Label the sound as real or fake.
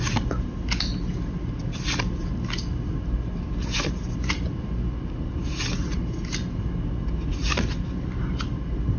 real